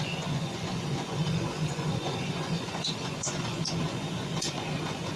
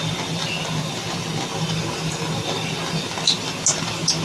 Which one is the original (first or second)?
second